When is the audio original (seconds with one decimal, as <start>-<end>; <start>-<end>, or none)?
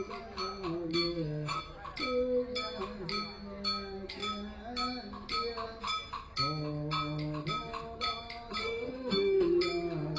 0.0-0.9; 1.6-8.6; 9.5-10.2